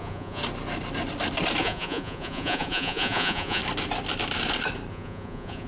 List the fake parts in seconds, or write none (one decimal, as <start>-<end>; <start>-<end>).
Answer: 0.0-0.4; 1.6-3.6; 4.9-5.7